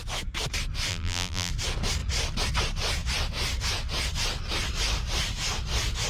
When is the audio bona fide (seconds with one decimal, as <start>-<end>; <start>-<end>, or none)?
0.0-0.9; 1.5-6.1